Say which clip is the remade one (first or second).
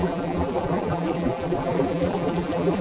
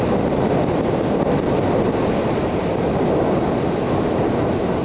first